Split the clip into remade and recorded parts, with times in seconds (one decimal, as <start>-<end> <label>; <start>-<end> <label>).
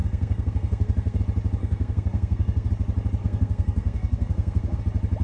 0.0-1.2 remade; 1.2-1.6 recorded; 1.6-2.7 remade; 2.7-3.2 recorded; 3.2-4.8 remade; 4.8-5.2 recorded